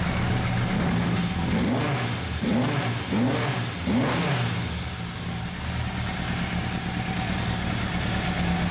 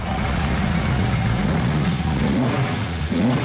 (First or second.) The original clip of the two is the first